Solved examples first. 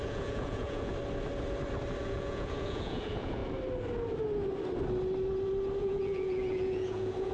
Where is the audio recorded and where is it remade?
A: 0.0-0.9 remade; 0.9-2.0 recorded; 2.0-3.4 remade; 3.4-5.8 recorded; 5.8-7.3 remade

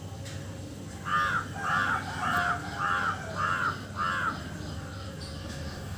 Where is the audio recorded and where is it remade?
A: 0.0-5.4 recorded; 5.4-6.0 remade